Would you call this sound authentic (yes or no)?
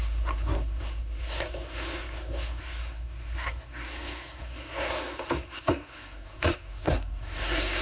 no